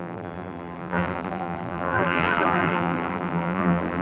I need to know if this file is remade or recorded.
remade